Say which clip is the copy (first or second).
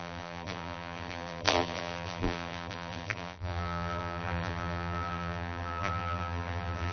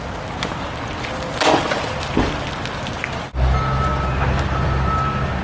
first